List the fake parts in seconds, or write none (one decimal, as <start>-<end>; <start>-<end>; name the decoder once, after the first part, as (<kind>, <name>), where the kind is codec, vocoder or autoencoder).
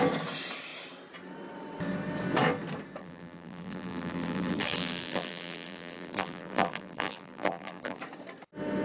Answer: 3.0-8.0 (vocoder, BigVGAN v2)